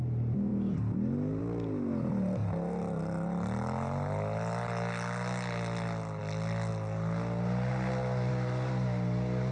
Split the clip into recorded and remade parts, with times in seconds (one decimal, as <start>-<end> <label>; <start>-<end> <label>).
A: 0.0-9.5 recorded